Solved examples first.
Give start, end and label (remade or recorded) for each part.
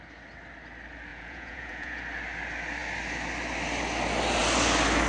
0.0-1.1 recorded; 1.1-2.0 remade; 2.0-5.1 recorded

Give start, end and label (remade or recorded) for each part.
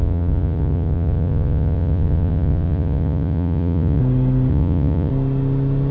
0.0-4.0 remade; 4.0-4.5 recorded; 4.5-5.1 remade; 5.1-5.9 recorded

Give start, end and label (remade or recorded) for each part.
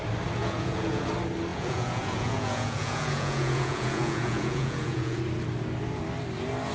0.0-0.4 recorded; 0.4-1.0 remade; 1.0-1.5 recorded; 1.5-5.2 remade; 5.2-6.7 recorded